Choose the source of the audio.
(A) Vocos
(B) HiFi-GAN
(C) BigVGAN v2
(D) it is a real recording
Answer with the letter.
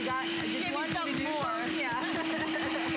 D